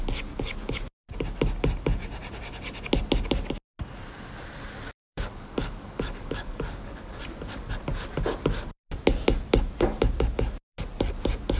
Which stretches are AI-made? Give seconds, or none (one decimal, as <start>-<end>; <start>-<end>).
5.0-7.7